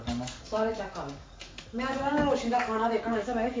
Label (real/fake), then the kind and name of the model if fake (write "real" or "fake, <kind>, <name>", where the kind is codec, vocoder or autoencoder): fake, codec, DAC